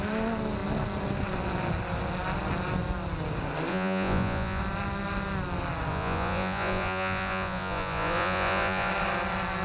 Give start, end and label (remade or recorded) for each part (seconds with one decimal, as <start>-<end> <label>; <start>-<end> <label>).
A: 0.0-3.7 recorded; 3.7-4.6 remade; 4.6-5.9 recorded; 5.9-8.9 remade; 8.9-9.6 recorded